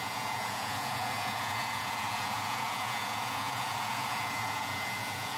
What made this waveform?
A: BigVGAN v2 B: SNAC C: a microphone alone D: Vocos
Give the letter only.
D